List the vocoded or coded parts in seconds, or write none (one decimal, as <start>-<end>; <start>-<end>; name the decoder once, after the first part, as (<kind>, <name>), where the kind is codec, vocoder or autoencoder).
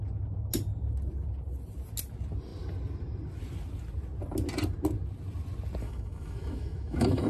5.8-7.3 (autoencoder, DAC-VAE)